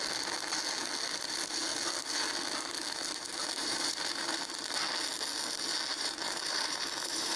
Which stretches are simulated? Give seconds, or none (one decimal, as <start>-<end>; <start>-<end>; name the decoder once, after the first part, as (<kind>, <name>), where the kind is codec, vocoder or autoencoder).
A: 3.4-4.4 (vocoder, BigVGAN v2); 5.9-7.4